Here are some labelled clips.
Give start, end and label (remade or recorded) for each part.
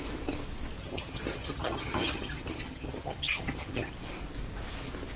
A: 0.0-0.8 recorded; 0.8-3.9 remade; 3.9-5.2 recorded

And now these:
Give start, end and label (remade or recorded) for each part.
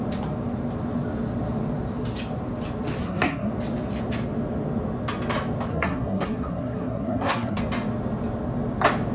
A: 0.0-3.0 recorded; 3.0-3.5 remade; 3.5-5.7 recorded; 5.7-7.6 remade; 7.6-9.1 recorded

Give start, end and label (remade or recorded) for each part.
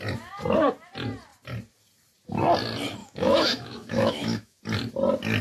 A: 0.0-3.0 recorded; 3.0-4.6 remade; 4.6-5.4 recorded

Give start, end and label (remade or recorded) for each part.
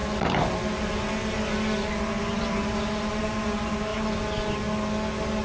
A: 0.0-5.4 recorded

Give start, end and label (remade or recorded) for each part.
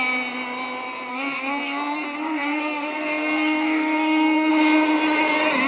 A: 0.0-1.1 recorded; 1.1-4.5 remade; 4.5-5.7 recorded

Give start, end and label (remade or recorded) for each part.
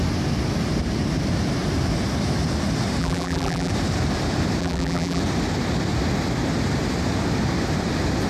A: 0.0-3.0 recorded; 3.0-3.7 remade; 3.7-4.6 recorded; 4.6-5.2 remade; 5.2-8.3 recorded